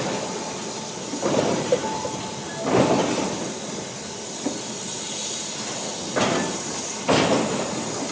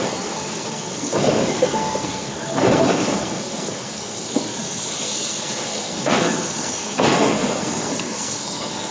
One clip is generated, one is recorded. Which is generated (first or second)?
second